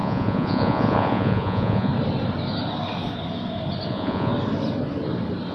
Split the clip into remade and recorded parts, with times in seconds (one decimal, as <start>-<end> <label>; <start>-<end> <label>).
0.0-1.9 remade; 1.9-3.9 recorded; 3.9-4.3 remade; 4.3-5.5 recorded